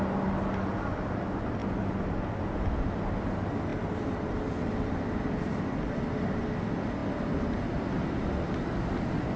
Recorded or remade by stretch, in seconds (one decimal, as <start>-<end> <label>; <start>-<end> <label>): 0.0-9.4 recorded